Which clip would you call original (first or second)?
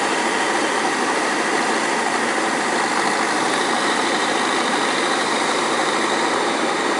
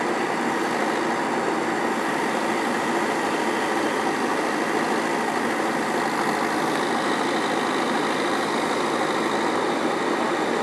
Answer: second